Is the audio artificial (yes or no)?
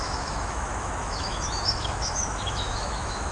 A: yes